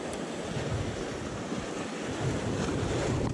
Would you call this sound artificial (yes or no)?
no